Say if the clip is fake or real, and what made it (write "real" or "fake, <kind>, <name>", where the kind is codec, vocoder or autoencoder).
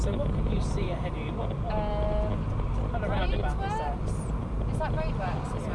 real